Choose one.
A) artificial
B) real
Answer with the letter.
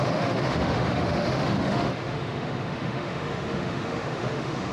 A